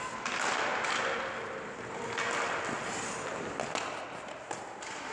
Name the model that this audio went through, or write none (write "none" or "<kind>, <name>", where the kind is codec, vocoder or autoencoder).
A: none